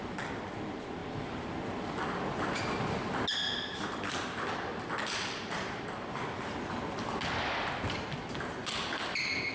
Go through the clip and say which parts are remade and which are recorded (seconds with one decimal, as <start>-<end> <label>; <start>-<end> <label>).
0.0-1.0 recorded; 1.0-1.5 remade; 1.5-9.5 recorded